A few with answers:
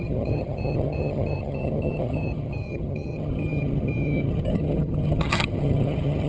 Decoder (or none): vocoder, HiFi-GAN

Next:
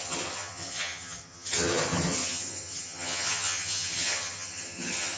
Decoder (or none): vocoder, HiFi-GAN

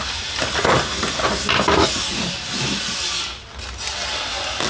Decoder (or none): none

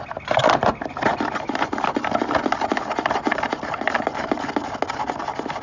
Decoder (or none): none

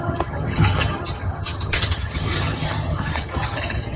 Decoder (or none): vocoder, HiFi-GAN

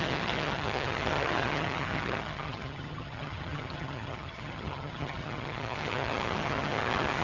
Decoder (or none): vocoder, HiFi-GAN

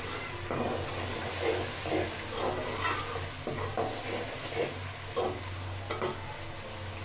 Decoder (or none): none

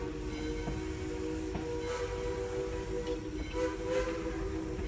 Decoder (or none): none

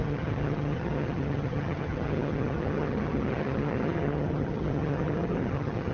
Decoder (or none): vocoder, HiFi-GAN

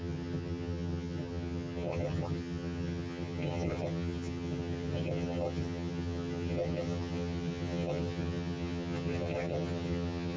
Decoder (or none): vocoder, HiFi-GAN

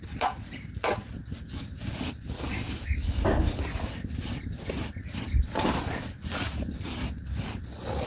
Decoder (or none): none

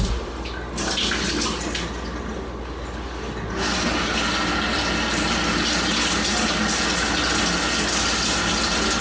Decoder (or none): none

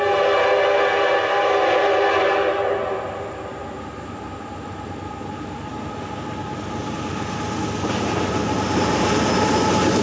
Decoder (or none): none